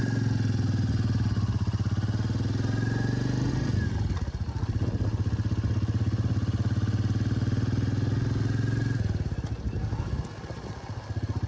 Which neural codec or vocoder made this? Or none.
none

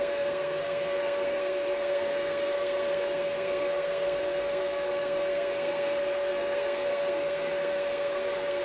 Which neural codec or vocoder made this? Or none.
codec, SNAC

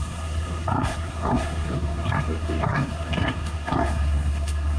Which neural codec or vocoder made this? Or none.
codec, SNAC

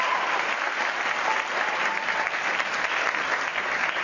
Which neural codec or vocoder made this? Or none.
none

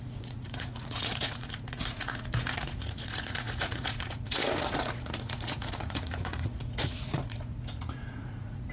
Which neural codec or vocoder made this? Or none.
vocoder, Vocos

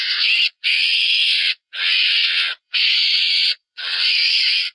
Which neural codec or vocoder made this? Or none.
vocoder, WaveNeXt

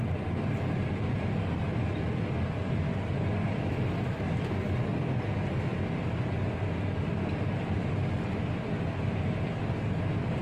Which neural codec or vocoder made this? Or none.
none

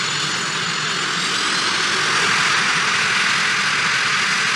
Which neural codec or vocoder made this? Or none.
none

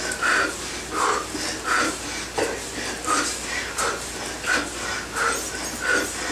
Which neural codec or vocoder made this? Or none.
none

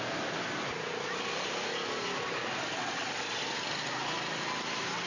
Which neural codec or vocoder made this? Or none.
none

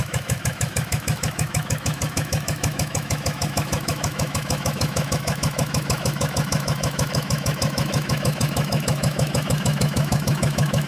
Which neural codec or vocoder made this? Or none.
autoencoder, DAC-VAE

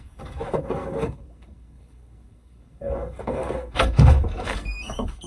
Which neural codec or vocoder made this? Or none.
codec, SNAC